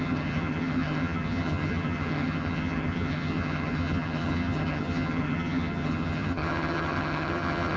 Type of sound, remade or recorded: remade